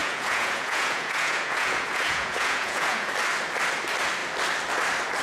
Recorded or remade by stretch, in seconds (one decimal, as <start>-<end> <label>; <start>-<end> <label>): 0.0-3.1 remade; 3.1-5.2 recorded

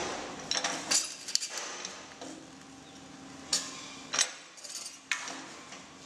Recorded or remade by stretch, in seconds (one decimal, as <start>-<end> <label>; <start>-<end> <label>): 0.0-6.1 recorded

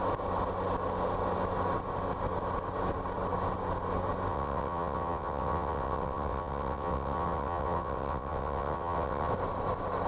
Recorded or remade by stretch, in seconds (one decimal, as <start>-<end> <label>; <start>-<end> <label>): 0.0-4.3 recorded; 4.3-9.3 remade; 9.3-10.1 recorded

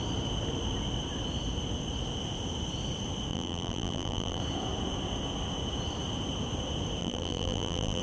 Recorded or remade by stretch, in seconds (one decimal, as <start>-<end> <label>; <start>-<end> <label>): 0.0-3.3 recorded; 3.3-4.4 remade; 4.4-7.0 recorded; 7.0-8.0 remade